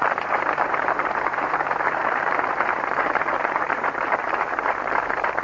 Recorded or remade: remade